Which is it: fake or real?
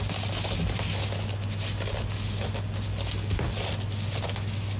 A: real